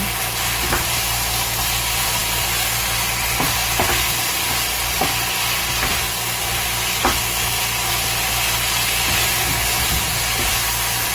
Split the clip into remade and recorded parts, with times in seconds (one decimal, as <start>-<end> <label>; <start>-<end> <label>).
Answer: 0.0-11.1 recorded